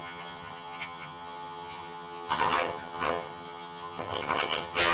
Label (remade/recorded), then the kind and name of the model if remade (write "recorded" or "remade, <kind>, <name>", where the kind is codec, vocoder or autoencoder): remade, vocoder, HiFi-GAN